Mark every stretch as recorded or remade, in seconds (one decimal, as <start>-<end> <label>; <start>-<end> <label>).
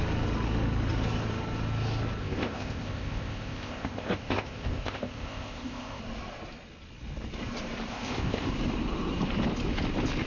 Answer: 0.0-2.2 recorded; 2.2-6.0 remade; 6.0-7.9 recorded; 7.9-8.5 remade; 8.5-10.3 recorded